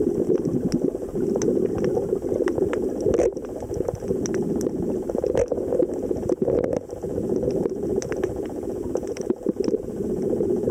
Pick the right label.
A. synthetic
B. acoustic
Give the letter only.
B